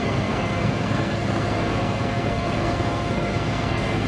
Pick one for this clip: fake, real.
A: fake